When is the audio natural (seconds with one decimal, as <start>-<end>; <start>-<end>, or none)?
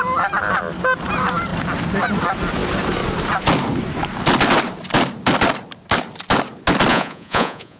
0.0-6.9